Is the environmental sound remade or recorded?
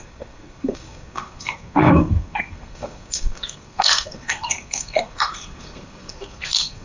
remade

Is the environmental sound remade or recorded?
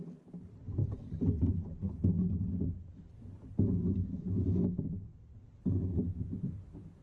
recorded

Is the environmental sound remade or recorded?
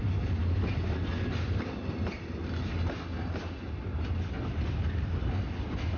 recorded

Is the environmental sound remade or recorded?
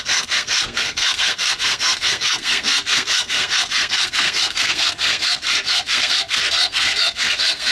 remade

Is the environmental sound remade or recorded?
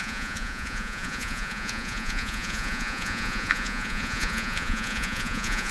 remade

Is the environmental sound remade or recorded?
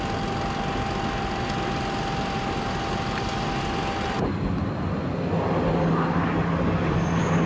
recorded